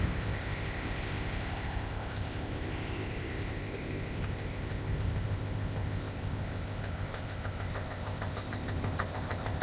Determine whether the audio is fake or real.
fake